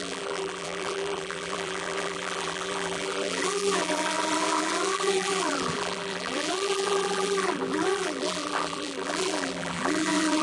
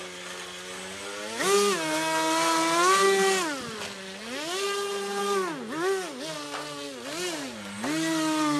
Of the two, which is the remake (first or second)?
first